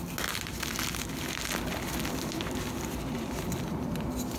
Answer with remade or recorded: recorded